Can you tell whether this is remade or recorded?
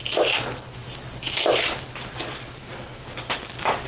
recorded